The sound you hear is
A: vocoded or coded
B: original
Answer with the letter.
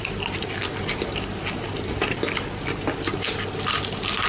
B